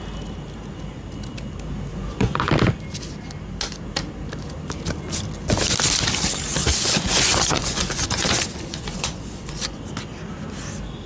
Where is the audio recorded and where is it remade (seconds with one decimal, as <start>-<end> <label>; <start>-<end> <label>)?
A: 0.0-1.9 recorded; 1.9-2.5 remade; 2.5-6.6 recorded; 6.6-9.8 remade; 9.8-11.1 recorded